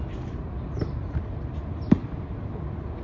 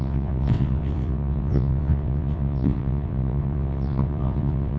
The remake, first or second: second